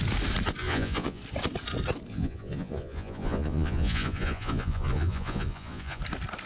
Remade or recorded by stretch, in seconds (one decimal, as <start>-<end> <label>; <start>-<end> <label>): 0.0-0.6 recorded; 0.6-1.2 remade; 1.2-2.1 recorded; 2.1-6.0 remade; 6.0-6.5 recorded